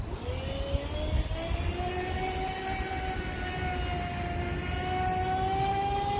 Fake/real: real